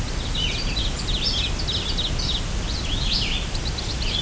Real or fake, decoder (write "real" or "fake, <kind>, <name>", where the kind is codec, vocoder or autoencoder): real